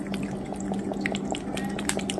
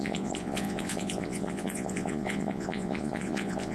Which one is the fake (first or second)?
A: second